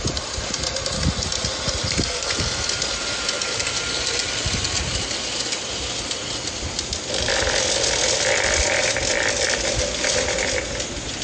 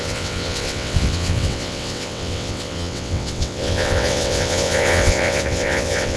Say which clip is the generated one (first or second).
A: second